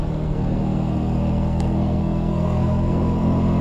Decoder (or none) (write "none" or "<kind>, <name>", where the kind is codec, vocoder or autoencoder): codec, SNAC